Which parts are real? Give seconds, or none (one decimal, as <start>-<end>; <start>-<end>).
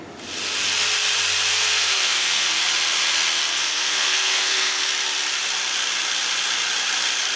0.0-1.5; 2.6-3.5; 4.8-7.4